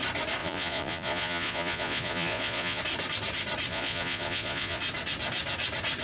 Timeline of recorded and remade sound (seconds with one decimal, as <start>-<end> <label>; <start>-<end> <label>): 0.0-0.4 recorded; 0.4-2.8 remade; 2.8-3.7 recorded; 3.7-4.8 remade; 4.8-6.0 recorded